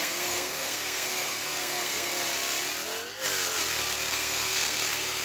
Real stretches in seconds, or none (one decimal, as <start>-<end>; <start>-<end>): 2.1-4.1